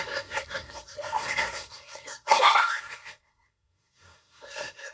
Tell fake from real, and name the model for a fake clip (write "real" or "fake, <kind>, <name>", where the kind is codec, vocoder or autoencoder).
fake, codec, SNAC